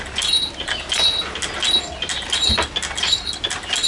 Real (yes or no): yes